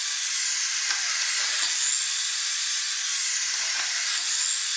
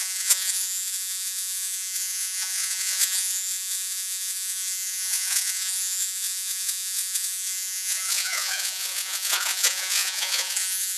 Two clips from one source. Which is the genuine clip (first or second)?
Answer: first